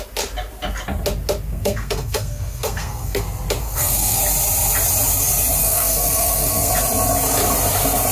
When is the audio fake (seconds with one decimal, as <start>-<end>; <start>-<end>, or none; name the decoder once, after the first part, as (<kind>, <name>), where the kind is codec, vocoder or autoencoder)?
1.5-3.2 (codec, SNAC); 3.6-4.2; 5.6-6.7